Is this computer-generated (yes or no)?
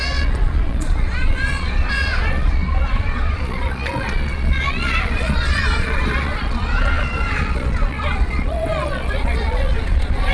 yes